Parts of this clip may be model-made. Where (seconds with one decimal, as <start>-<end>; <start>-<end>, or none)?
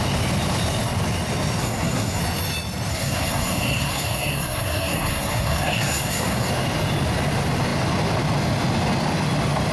1.6-2.2; 2.9-6.5